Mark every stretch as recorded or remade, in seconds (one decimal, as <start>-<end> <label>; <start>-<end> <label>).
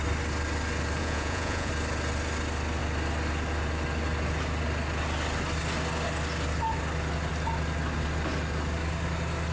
0.0-1.0 recorded; 1.0-1.7 remade; 1.7-9.5 recorded